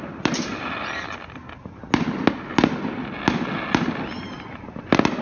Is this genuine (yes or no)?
yes